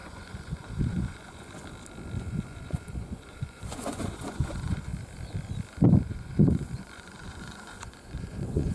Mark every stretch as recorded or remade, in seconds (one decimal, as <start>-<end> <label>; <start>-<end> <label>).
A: 0.0-1.6 remade; 1.6-2.2 recorded; 2.2-4.9 remade; 4.9-6.0 recorded; 6.0-8.7 remade